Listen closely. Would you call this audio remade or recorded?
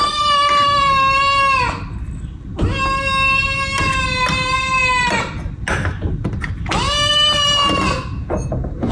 recorded